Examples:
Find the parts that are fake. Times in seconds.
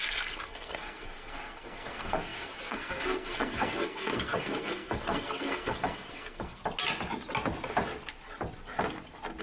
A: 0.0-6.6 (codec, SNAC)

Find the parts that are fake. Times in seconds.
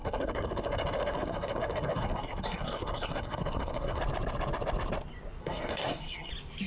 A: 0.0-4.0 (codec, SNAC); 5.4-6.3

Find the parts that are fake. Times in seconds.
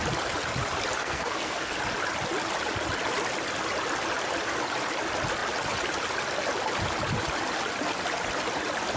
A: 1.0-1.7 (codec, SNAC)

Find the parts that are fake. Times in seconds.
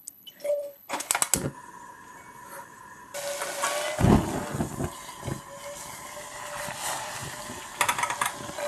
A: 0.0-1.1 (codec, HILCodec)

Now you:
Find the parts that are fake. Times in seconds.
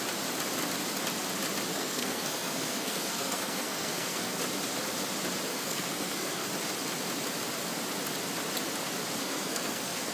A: 1.7-4.4 (codec, SNAC); 5.5-6.5; 9.2-10.1